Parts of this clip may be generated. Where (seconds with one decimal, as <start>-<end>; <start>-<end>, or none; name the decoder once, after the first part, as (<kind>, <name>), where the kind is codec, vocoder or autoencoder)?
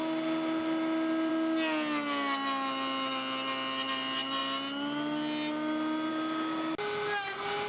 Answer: none